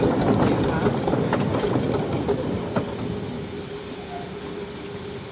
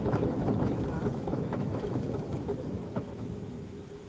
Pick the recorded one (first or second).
first